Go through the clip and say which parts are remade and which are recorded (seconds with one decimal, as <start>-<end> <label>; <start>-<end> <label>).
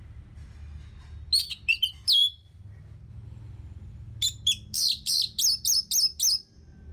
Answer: 0.0-6.9 recorded